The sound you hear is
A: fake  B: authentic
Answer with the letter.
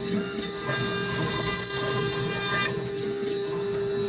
B